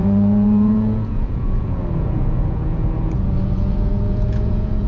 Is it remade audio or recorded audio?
remade